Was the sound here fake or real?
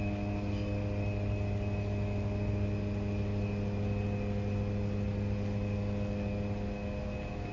real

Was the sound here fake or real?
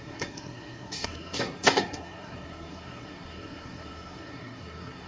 fake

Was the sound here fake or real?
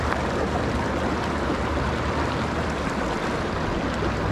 real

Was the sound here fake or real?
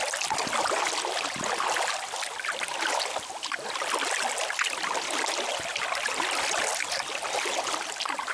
real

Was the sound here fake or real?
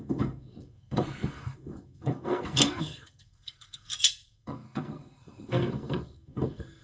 fake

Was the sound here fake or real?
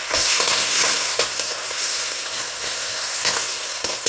fake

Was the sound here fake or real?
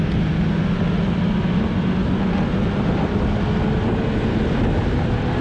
real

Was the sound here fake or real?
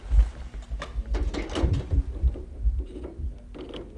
real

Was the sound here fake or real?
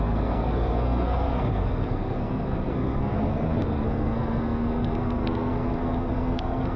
fake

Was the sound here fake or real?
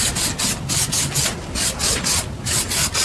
real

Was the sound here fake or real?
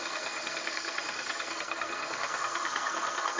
fake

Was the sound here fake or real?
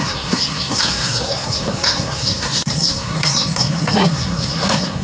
fake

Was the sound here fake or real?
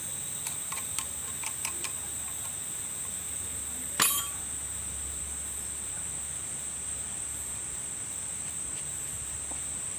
real